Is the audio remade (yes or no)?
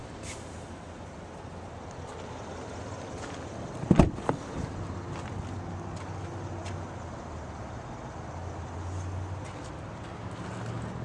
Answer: no